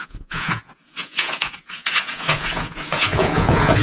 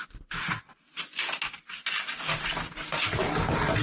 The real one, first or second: second